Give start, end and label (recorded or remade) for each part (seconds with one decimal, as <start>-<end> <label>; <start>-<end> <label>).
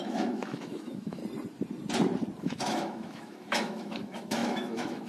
0.0-1.2 remade; 1.2-2.4 recorded; 2.4-5.1 remade